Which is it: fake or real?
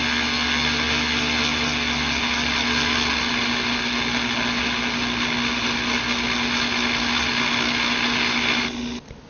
real